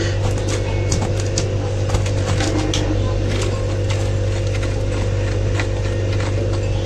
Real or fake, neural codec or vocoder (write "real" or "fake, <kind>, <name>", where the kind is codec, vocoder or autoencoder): real